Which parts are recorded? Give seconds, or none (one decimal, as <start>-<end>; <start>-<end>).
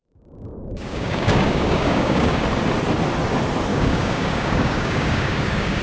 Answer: 0.0-0.5; 2.4-3.7